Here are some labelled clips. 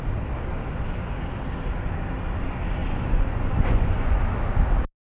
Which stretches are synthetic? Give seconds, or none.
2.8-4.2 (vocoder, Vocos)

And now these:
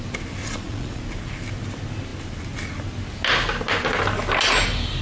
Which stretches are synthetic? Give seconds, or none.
0.4-1.0 (vocoder, Vocos)

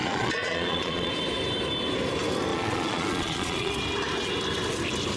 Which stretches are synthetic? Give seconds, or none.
0.0-1.1 (vocoder, Vocos); 2.5-3.7

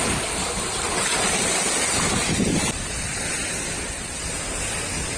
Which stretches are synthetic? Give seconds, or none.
none

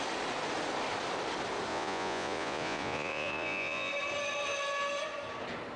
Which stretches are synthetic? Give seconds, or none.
1.7-3.9 (vocoder, Vocos)

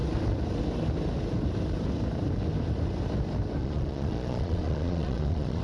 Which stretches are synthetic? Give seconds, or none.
3.6-5.6 (vocoder, Vocos)